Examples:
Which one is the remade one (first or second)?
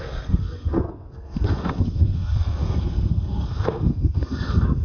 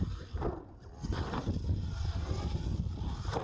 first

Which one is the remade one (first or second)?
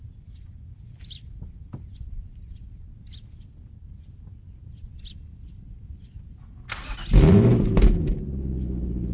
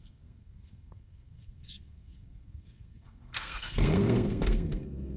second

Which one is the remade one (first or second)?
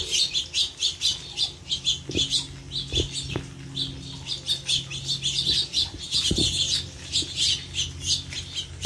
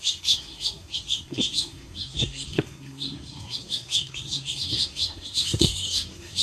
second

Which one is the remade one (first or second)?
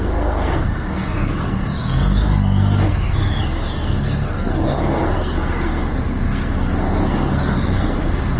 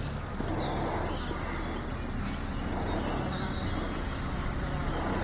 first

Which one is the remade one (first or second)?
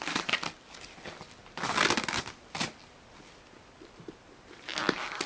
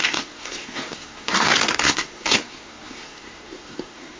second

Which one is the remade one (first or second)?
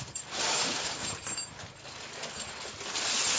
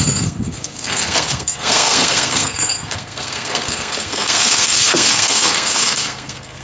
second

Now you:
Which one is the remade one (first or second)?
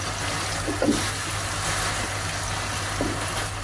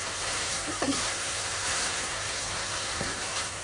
second